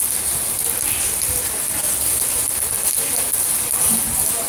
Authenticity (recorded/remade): recorded